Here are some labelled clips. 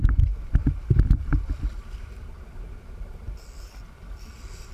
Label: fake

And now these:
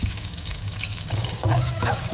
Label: fake